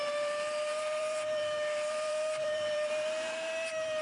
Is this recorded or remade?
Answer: remade